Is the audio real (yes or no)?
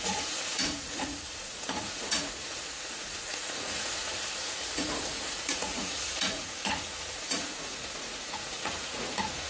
no